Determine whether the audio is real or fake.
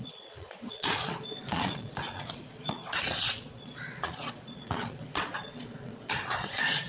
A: fake